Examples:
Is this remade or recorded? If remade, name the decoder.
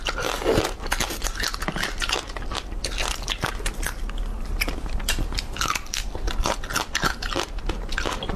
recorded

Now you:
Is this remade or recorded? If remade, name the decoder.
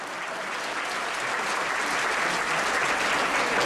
recorded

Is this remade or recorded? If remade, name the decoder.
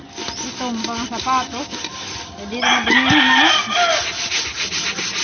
recorded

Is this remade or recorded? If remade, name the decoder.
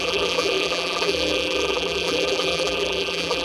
remade, vocoder, BigVGAN v2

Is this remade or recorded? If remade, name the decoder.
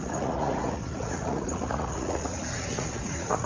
remade, vocoder, Vocos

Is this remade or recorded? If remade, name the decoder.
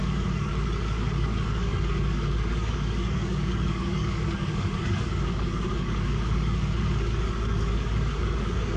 remade, codec, DAC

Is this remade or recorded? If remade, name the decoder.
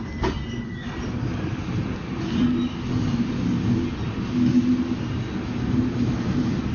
recorded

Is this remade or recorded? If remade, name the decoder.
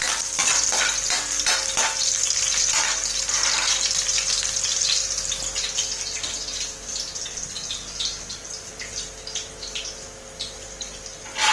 recorded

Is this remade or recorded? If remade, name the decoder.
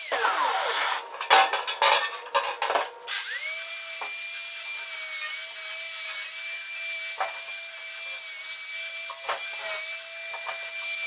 recorded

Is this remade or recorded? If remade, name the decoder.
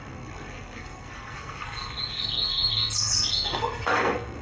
remade, codec, SNAC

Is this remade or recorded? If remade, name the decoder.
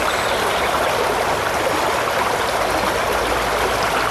recorded